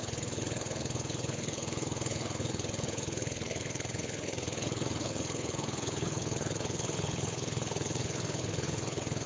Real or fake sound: fake